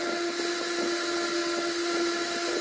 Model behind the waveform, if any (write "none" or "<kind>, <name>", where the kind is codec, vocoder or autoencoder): none